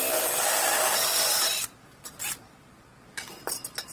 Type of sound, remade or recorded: remade